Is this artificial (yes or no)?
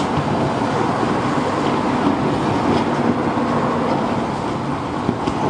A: no